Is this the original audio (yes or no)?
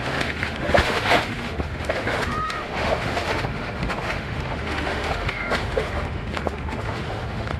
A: no